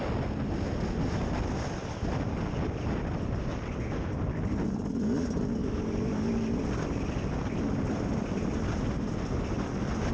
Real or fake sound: real